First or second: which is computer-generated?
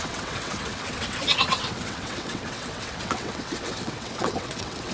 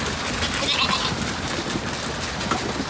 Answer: first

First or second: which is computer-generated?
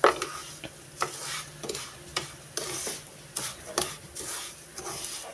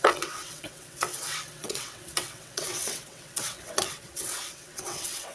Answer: second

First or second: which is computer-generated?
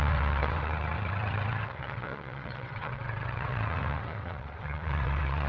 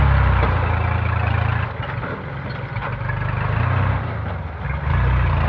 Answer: first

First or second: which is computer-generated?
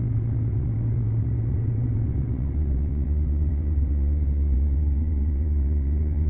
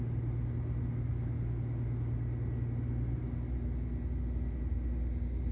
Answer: first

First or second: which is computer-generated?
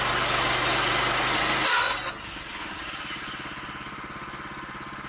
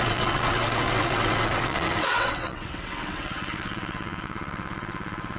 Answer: second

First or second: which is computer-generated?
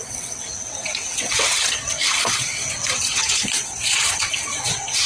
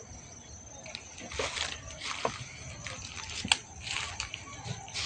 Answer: first